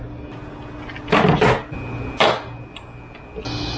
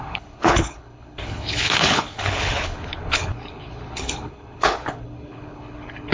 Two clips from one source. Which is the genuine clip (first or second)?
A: first